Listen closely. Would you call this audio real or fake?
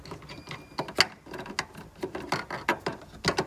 real